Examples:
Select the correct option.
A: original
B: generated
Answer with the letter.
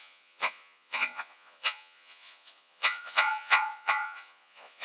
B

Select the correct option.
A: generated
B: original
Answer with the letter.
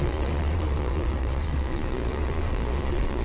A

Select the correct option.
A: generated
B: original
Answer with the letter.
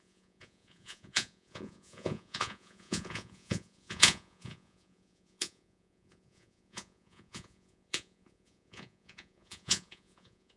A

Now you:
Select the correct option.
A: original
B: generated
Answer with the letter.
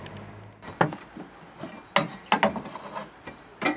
A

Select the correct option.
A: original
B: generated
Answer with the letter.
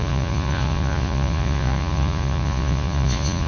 B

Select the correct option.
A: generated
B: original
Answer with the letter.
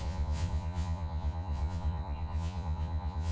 A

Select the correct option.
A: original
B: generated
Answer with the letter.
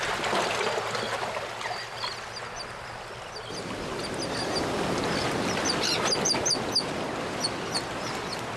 A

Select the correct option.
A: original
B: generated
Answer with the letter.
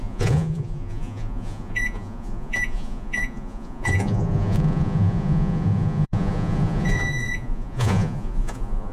B